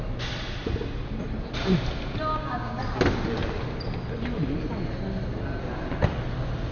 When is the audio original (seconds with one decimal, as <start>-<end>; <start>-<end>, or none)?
0.0-2.3; 2.8-6.7